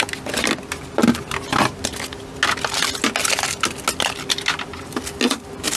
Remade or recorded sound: recorded